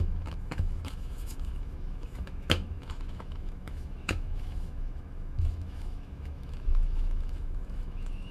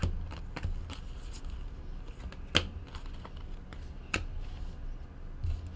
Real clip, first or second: second